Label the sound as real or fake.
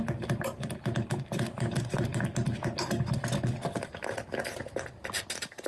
real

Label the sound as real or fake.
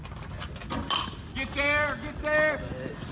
real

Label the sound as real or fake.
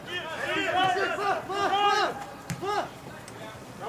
real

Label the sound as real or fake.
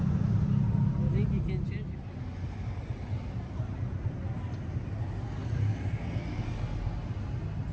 real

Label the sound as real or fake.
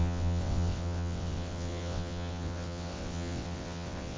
fake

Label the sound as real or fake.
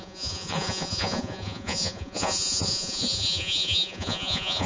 fake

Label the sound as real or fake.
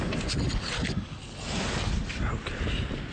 real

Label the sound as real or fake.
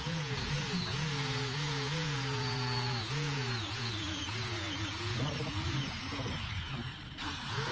fake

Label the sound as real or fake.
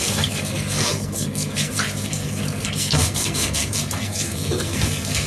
fake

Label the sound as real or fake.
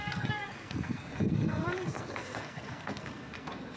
fake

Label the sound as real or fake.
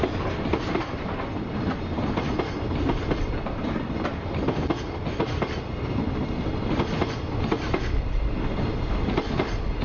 real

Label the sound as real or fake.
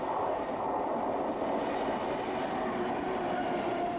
real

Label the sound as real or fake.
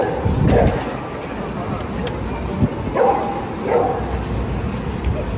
real